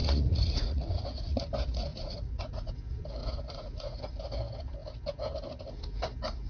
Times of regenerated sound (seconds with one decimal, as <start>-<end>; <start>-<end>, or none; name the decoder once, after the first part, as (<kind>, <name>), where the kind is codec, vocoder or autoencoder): 0.0-1.4 (vocoder, Vocos); 1.9-2.7; 3.2-4.0